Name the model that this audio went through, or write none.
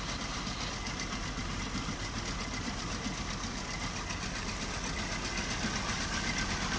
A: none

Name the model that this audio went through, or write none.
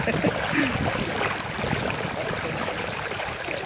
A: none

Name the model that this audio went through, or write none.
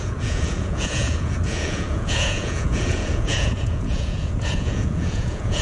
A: vocoder, Vocos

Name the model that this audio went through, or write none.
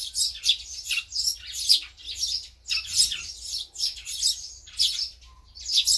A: none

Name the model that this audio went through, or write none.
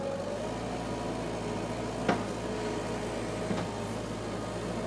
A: none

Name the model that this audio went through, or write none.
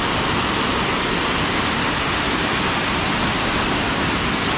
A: none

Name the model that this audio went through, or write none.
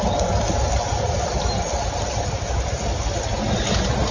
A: none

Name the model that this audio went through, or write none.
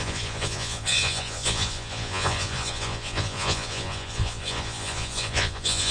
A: vocoder, Vocos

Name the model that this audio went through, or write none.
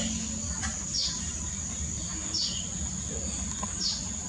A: none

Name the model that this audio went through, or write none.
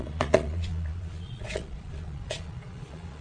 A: vocoder, Vocos